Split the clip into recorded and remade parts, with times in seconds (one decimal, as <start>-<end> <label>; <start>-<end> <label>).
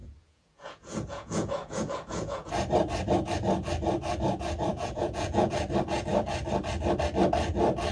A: 0.0-2.5 remade; 2.5-4.7 recorded; 4.7-5.5 remade; 5.5-7.9 recorded